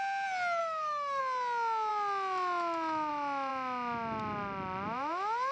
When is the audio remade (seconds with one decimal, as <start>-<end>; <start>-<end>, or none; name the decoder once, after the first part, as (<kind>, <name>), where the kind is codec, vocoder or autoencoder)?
0.6-1.2 (autoencoder, DAC-VAE)